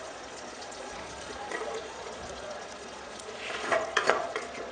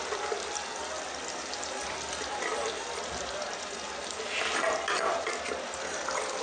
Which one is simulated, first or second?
first